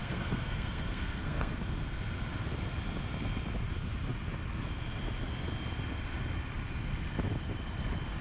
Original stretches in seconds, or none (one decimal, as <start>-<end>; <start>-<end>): 1.6-8.2